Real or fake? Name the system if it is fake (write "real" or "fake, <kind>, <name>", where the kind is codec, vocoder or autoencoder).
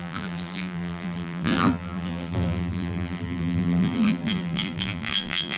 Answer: fake, vocoder, BigVGAN v2